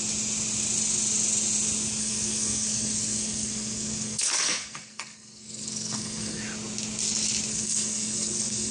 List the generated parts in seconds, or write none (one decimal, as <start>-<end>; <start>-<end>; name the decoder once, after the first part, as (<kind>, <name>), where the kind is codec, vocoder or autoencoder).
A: 2.0-6.4 (codec, SNAC); 7.5-8.7